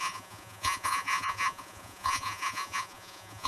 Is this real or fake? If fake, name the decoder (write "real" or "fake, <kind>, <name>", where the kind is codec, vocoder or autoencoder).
fake, vocoder, Vocos